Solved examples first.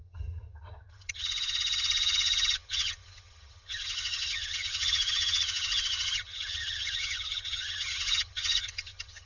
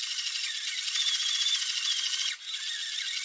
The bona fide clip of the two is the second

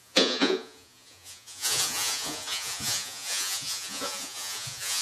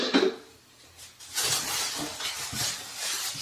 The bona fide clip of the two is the second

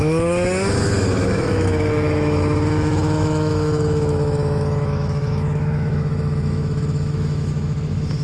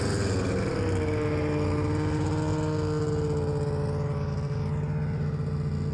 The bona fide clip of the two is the second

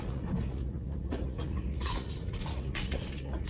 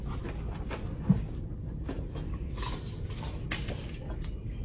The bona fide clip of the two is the second